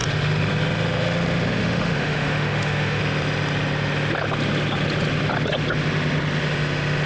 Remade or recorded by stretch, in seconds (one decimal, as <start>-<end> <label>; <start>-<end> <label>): 0.0-1.6 recorded; 1.6-3.0 remade; 3.0-7.1 recorded